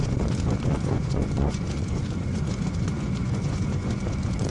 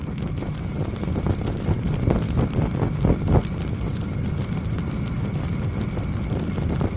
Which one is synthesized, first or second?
first